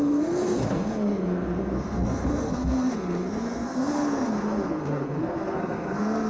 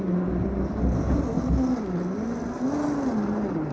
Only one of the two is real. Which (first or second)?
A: second